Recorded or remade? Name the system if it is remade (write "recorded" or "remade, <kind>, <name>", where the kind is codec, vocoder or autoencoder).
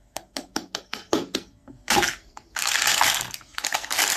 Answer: remade, codec, SNAC